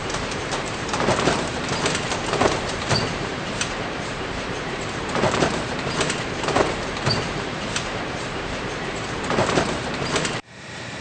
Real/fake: fake